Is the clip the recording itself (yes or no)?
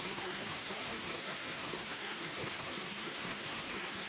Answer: no